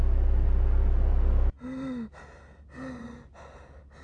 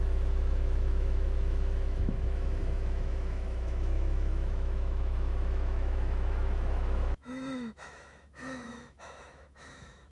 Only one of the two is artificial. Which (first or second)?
second